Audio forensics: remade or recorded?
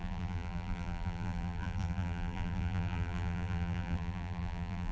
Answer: remade